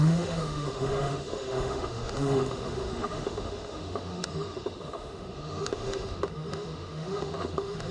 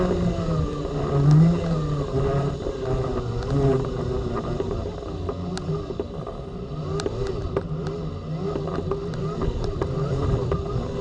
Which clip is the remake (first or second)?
first